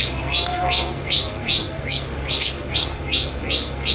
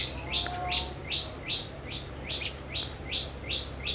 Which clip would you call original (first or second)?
second